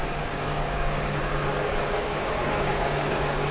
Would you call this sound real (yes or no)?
no